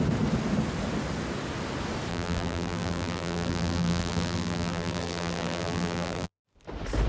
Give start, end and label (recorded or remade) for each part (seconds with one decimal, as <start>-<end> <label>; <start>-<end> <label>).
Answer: 0.0-2.1 recorded; 2.1-6.4 remade; 6.4-7.1 recorded